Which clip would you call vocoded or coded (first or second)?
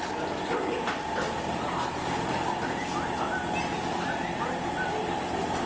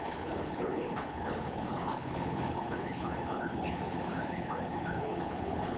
second